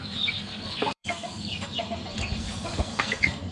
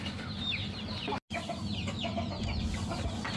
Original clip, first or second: second